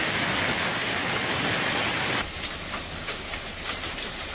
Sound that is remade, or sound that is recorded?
recorded